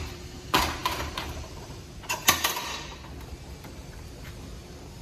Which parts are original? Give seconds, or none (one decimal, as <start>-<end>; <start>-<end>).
3.0-3.6